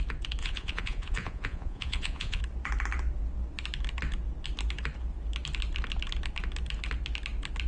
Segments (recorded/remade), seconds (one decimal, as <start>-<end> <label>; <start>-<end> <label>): 0.0-0.4 recorded; 0.4-2.4 remade; 2.4-7.7 recorded